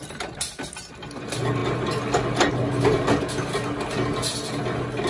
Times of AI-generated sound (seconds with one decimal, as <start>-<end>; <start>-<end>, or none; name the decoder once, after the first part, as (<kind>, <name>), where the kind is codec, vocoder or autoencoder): none